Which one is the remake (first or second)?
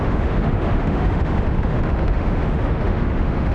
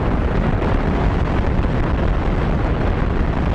first